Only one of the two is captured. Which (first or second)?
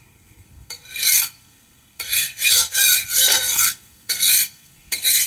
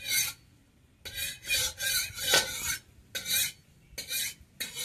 second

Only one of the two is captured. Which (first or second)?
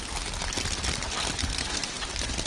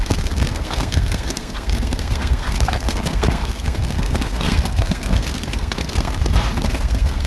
first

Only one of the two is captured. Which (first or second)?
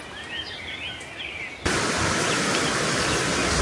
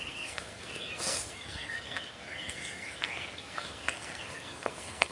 first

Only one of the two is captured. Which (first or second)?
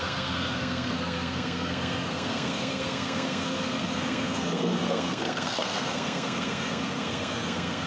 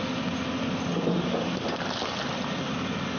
second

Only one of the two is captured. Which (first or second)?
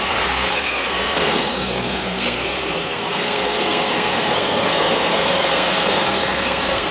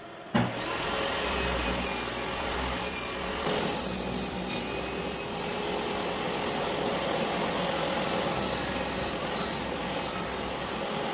second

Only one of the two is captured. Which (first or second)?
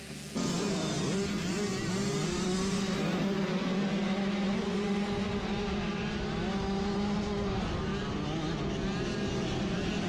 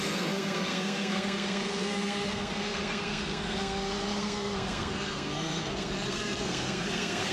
first